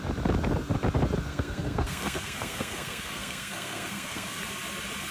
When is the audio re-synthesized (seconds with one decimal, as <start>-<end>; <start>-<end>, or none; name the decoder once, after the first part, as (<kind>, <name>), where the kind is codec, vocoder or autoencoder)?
1.3-4.4 (codec, SNAC)